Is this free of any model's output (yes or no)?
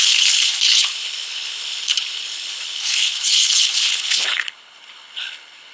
no